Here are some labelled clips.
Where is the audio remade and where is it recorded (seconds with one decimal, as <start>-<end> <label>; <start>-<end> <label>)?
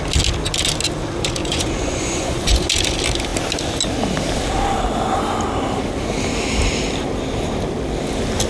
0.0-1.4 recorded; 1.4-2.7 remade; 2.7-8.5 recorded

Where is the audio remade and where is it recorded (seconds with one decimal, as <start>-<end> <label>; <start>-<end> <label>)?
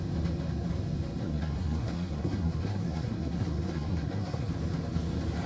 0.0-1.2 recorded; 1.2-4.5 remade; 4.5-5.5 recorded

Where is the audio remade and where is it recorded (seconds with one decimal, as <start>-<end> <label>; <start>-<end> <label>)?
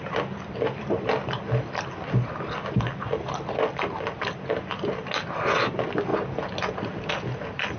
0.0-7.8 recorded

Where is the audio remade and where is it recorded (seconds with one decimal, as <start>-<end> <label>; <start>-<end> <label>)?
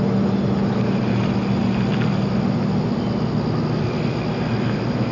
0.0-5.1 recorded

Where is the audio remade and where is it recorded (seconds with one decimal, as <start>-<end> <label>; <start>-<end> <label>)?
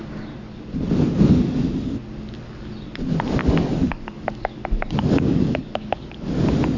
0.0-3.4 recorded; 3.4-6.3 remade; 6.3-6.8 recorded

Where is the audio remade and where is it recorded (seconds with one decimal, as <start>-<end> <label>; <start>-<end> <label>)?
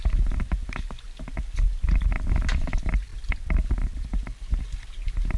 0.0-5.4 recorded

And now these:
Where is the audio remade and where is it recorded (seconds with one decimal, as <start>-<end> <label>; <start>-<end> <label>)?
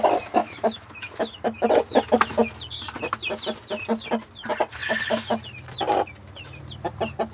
0.0-0.4 recorded; 0.4-1.7 remade; 1.7-7.3 recorded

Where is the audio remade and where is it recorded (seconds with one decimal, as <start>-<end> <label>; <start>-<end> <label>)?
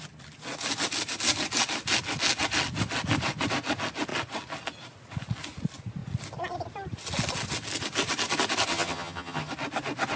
0.0-8.7 recorded; 8.7-9.5 remade; 9.5-10.2 recorded